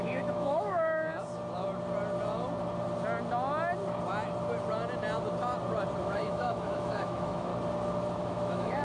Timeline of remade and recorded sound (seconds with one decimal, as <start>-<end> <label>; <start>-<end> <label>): 0.0-1.1 remade; 1.1-6.0 recorded; 6.0-7.5 remade; 7.5-8.2 recorded; 8.2-8.8 remade